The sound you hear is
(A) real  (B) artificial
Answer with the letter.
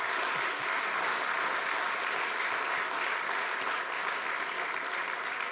A